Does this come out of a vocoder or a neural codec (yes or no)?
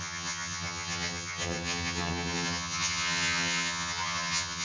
yes